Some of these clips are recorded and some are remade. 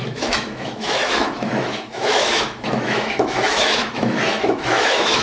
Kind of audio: remade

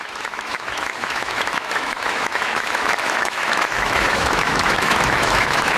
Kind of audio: remade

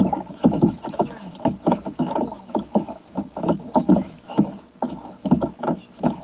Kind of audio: remade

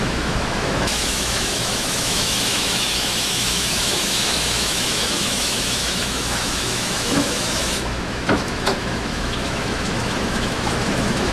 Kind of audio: remade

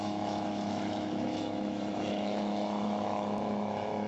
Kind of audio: remade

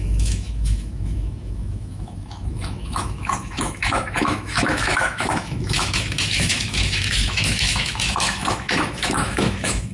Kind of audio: remade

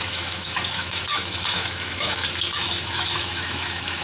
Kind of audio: remade